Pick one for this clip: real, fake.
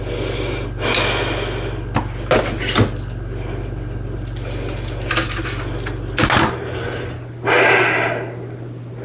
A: real